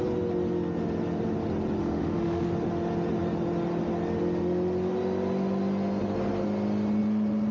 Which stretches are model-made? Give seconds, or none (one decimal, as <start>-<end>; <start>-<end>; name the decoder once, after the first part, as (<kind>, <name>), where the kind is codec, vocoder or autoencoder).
1.8-2.5 (autoencoder, DAC-VAE)